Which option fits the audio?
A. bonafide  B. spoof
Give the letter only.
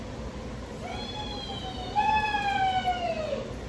A